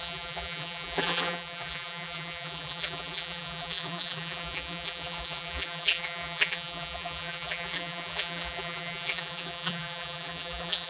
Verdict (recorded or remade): remade